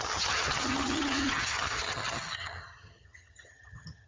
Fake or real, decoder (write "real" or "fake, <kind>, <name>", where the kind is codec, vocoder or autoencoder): fake, vocoder, HiFi-GAN